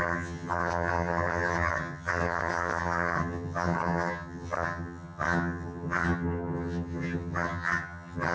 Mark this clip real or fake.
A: fake